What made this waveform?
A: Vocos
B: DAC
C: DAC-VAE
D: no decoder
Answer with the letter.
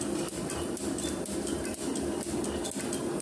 D